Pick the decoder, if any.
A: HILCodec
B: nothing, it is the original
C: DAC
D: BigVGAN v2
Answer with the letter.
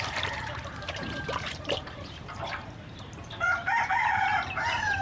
D